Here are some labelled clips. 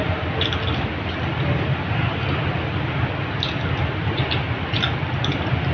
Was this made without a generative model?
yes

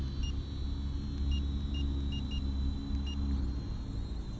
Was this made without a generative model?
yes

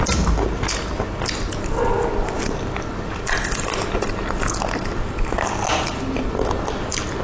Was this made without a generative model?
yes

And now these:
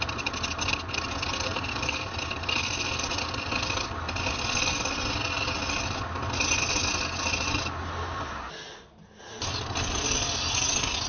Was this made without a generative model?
yes